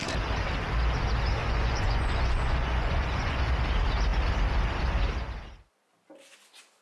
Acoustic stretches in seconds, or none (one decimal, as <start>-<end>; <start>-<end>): 0.0-1.4; 3.4-6.8